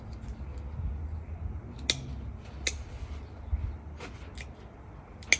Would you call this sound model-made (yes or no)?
no